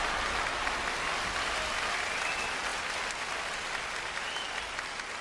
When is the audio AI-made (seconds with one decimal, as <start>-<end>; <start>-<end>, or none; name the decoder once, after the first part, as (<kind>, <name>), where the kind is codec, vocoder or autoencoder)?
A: none